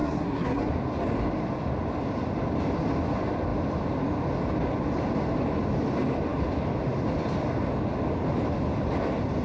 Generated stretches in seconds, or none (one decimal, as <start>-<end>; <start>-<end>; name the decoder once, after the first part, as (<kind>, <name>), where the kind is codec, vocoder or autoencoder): 0.0-0.7 (codec, SNAC)